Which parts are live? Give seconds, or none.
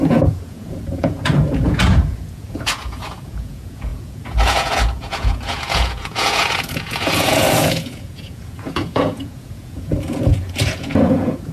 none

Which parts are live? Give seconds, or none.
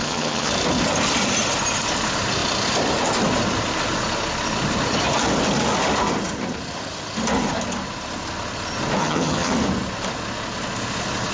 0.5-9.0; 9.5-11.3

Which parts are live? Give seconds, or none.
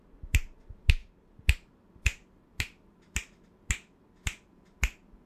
0.0-5.3